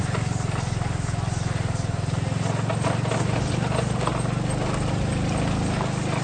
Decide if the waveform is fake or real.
real